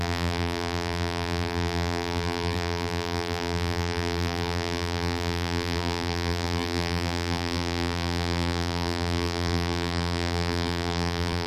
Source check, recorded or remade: remade